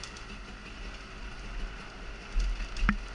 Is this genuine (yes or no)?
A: yes